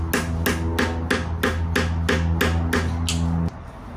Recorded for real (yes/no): yes